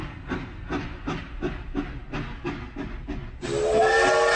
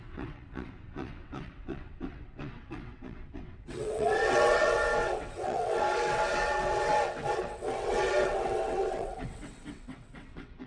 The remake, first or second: second